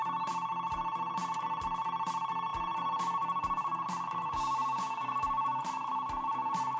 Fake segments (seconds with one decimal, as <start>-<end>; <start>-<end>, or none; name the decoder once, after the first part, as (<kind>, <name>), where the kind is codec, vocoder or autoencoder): 1.1-1.6 (vocoder, BigVGAN v2); 2.5-5.6